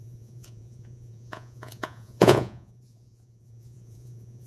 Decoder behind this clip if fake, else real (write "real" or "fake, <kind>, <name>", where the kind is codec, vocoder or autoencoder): fake, vocoder, Vocos